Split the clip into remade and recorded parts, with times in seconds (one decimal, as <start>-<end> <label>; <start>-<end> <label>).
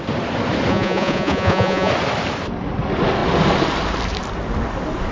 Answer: 0.0-0.7 recorded; 0.7-1.9 remade; 1.9-5.1 recorded